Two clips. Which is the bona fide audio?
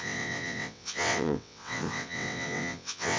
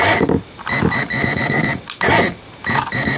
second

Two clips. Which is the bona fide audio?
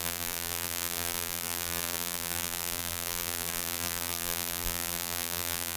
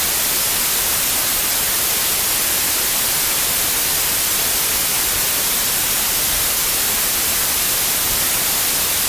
second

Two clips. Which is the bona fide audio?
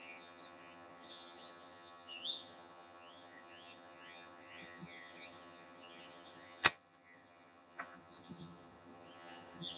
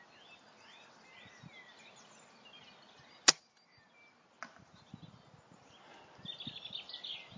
second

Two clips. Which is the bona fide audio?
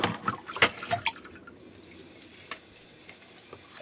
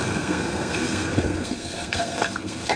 first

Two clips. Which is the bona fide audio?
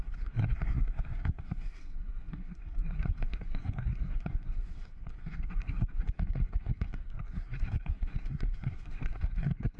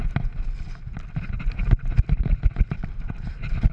second